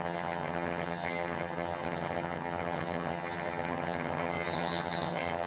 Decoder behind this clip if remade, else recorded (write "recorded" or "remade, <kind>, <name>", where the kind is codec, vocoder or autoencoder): remade, vocoder, HiFi-GAN